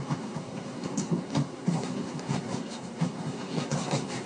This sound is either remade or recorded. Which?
remade